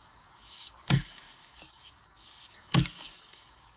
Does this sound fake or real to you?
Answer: fake